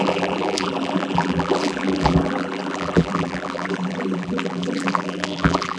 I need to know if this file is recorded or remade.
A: remade